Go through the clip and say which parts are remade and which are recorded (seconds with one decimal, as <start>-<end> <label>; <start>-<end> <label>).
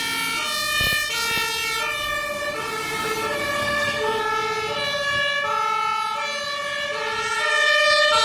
0.0-3.6 recorded; 3.6-4.2 remade; 4.2-8.2 recorded